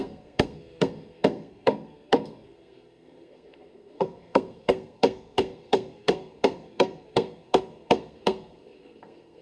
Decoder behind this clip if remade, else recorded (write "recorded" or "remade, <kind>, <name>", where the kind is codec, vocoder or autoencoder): remade, codec, SNAC